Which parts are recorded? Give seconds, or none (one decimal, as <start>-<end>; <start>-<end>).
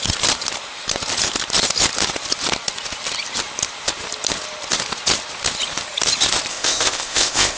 0.0-6.5